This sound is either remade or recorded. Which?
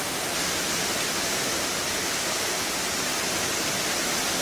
recorded